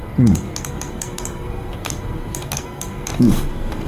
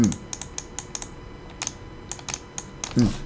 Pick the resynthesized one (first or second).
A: first